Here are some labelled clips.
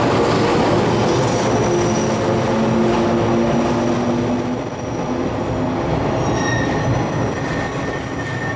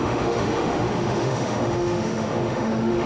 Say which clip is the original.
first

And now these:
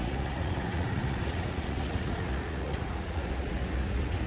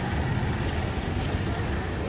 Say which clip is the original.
second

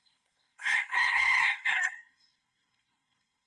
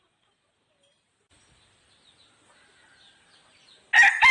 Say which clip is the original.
second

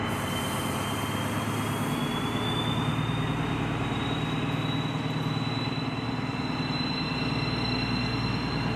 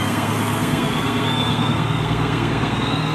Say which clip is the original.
first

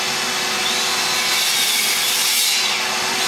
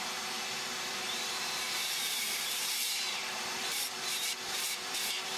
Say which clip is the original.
first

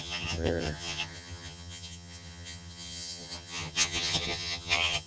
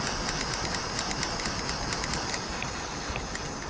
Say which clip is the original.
second